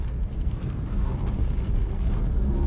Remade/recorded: remade